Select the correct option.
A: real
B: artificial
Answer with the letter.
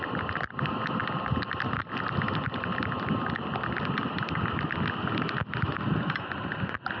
A